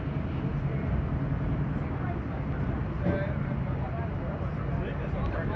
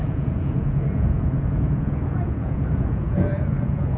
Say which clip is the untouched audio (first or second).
first